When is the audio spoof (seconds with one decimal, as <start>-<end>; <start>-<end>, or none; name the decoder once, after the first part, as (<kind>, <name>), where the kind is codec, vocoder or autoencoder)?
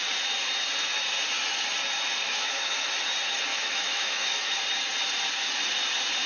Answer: 2.2-2.9 (autoencoder, DAC-VAE); 3.5-4.6